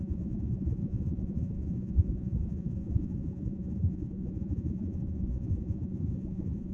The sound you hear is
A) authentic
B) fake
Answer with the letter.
B